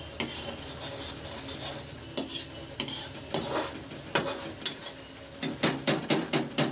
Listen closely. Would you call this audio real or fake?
real